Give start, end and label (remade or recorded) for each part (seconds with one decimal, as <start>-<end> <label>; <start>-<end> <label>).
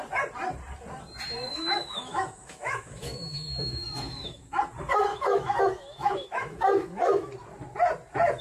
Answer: 0.0-1.5 recorded; 1.5-4.6 remade; 4.6-5.1 recorded; 5.1-7.3 remade; 7.3-8.4 recorded